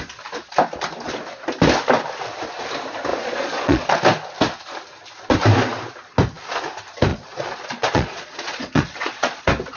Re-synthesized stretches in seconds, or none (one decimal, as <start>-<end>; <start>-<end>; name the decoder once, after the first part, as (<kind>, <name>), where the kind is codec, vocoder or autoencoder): 3.1-3.9 (vocoder, Vocos); 7.1-9.4